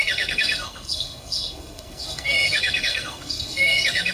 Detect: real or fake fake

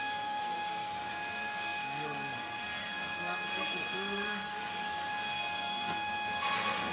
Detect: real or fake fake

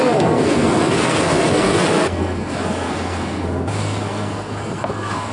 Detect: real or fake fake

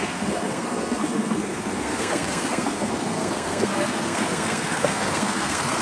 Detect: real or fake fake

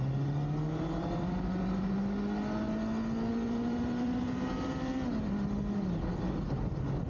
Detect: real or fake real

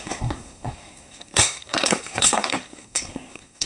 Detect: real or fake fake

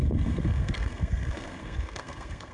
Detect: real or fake fake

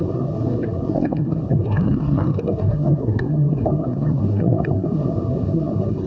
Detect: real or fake fake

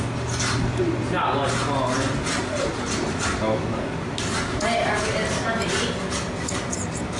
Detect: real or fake real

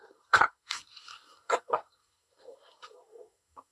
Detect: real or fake fake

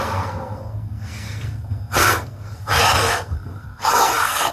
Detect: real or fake fake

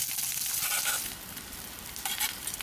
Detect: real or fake real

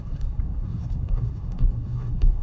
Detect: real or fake fake